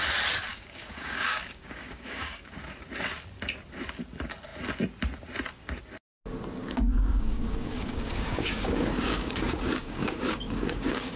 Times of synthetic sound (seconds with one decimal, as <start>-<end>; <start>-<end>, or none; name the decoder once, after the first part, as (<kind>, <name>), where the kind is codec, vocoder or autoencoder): 0.5-2.5 (codec, DAC); 6.6-11.2